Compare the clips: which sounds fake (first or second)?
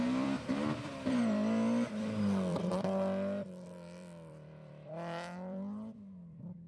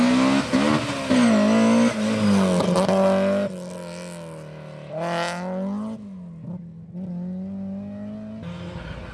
first